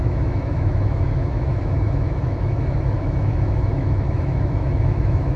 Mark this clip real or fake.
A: fake